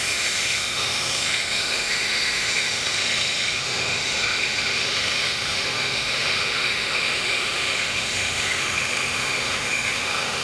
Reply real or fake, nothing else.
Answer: fake